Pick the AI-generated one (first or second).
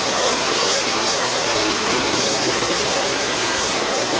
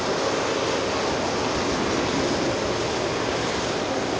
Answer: first